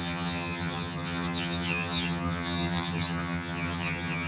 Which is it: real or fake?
fake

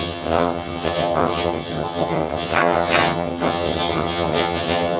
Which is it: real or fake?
fake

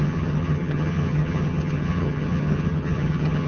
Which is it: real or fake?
fake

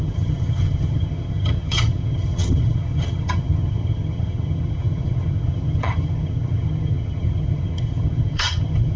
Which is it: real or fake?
fake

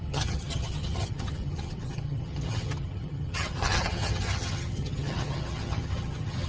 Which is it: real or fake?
fake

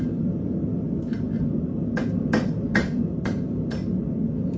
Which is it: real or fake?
real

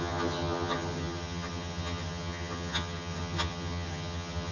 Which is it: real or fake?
fake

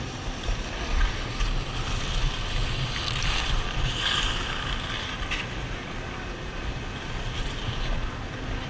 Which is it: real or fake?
real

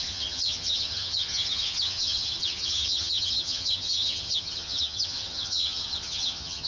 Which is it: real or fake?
fake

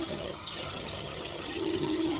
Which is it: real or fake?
fake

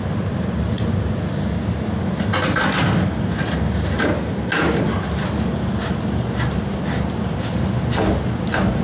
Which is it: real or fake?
real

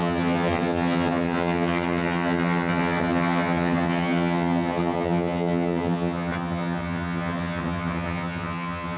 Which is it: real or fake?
fake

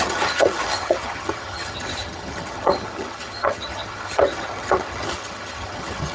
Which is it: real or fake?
fake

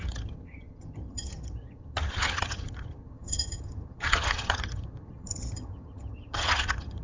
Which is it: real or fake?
fake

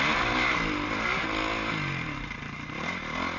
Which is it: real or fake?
real